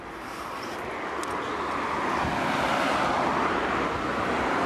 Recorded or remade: recorded